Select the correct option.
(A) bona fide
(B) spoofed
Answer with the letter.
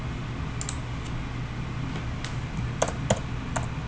A